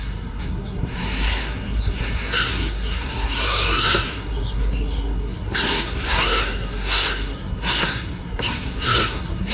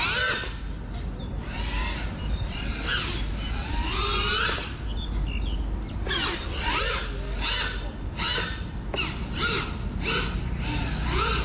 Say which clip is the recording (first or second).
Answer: second